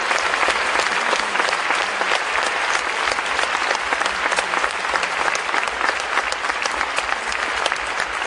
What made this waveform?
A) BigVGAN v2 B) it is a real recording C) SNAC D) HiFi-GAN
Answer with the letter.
B